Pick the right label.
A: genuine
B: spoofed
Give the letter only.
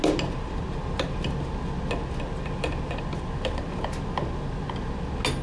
A